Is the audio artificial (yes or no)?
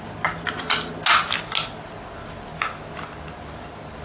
no